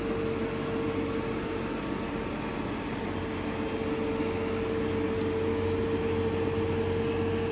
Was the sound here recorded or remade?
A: recorded